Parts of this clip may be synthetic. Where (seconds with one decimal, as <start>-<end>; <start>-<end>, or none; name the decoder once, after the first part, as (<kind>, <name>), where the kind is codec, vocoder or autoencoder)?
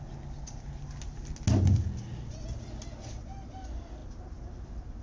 none